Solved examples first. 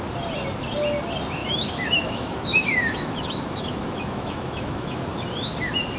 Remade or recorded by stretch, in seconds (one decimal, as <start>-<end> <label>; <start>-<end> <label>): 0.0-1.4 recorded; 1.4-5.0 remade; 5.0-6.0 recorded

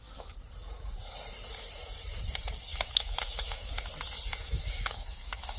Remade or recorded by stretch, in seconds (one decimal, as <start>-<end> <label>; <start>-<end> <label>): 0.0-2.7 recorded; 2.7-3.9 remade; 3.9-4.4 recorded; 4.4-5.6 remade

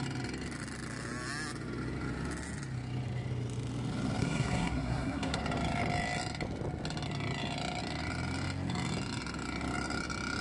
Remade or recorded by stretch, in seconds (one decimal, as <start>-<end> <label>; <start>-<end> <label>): 0.0-4.2 recorded; 4.2-5.4 remade; 5.4-10.4 recorded